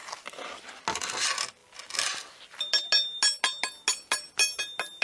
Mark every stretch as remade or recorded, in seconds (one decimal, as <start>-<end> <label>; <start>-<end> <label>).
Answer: 0.0-5.0 recorded